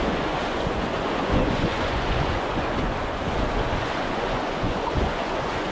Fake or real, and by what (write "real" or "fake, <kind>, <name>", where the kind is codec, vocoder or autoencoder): fake, vocoder, Vocos